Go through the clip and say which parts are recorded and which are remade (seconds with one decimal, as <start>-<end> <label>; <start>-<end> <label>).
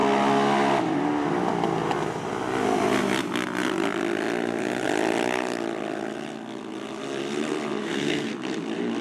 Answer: 0.0-7.8 recorded; 7.8-8.3 remade; 8.3-9.0 recorded